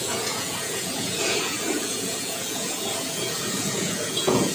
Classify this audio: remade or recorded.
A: remade